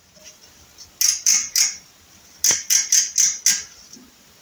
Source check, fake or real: real